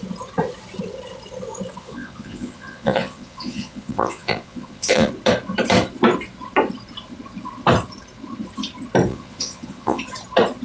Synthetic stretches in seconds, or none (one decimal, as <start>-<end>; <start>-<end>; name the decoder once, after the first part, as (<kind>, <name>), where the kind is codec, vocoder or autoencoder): 1.8-5.1 (vocoder, Vocos); 9.1-10.0